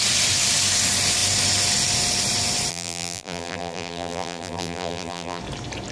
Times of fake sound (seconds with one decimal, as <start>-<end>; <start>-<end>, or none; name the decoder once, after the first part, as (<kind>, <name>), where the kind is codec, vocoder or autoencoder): 2.7-5.4 (vocoder, BigVGAN v2)